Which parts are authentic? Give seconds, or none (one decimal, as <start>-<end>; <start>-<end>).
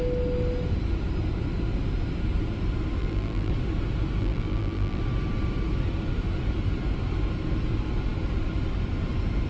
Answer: 0.0-3.0; 3.5-4.2; 5.0-9.5